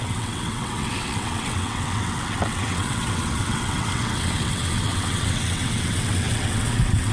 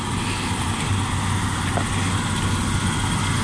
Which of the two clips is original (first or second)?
second